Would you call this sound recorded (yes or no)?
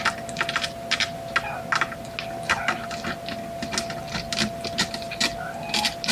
yes